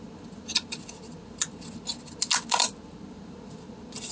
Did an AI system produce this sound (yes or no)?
no